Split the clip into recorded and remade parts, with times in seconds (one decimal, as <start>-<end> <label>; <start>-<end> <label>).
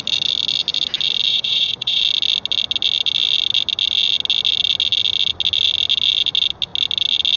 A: 0.0-1.3 recorded; 1.3-2.0 remade; 2.0-7.4 recorded